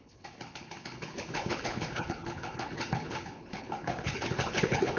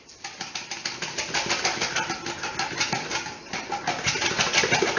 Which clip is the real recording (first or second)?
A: second